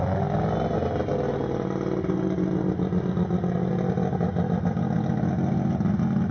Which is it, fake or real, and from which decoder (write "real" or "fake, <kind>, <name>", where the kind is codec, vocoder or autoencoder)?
real